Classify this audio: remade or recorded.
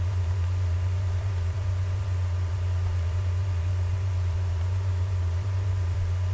remade